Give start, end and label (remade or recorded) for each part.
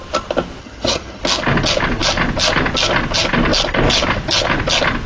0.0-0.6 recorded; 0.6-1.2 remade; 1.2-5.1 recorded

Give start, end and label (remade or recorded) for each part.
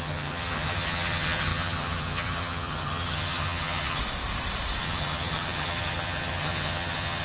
0.0-4.0 remade; 4.0-4.8 recorded; 4.8-7.2 remade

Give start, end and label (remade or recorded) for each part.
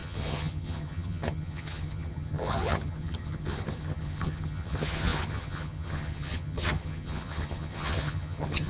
0.0-8.7 remade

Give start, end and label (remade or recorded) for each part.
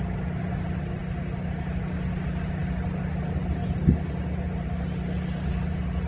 0.0-6.1 recorded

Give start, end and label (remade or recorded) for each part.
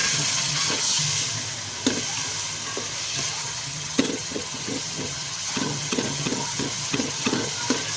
0.0-1.0 remade; 1.0-3.1 recorded; 3.1-7.5 remade; 7.5-8.0 recorded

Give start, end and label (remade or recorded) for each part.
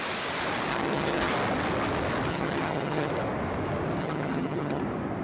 0.0-0.7 recorded; 0.7-1.3 remade; 1.3-2.3 recorded; 2.3-3.1 remade; 3.1-4.0 recorded; 4.0-4.8 remade; 4.8-5.2 recorded